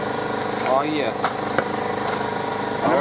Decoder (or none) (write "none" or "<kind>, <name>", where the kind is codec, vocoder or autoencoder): none